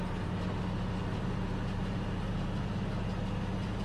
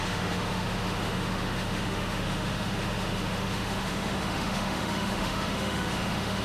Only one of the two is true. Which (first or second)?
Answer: first